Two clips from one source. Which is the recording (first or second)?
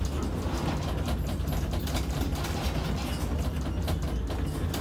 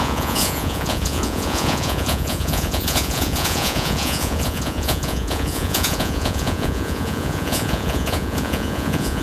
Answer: first